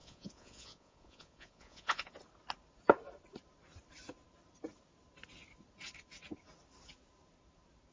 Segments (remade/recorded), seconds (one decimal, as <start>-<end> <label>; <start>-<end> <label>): 0.0-2.1 remade; 2.1-7.9 recorded